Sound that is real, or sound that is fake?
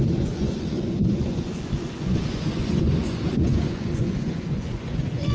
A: fake